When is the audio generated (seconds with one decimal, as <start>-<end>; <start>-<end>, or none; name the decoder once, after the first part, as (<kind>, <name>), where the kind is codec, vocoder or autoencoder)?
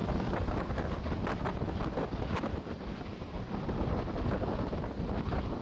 none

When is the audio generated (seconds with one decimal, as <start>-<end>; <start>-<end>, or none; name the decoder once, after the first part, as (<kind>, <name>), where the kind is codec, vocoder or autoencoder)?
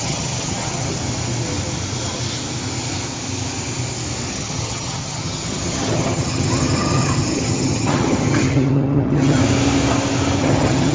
0.0-1.0 (vocoder, HiFi-GAN); 4.3-9.4; 10.4-10.9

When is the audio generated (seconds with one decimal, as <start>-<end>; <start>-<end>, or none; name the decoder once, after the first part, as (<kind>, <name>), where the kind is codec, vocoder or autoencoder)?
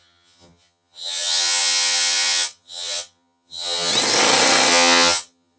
0.0-3.9 (vocoder, HiFi-GAN); 4.7-5.6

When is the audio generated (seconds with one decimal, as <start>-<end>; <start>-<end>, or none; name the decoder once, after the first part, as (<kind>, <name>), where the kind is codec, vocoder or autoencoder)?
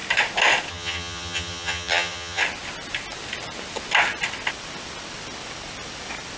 0.7-2.4 (vocoder, HiFi-GAN)